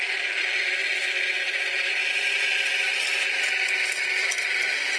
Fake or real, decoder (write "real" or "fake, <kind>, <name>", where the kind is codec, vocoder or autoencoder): real